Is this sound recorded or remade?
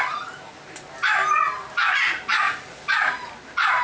recorded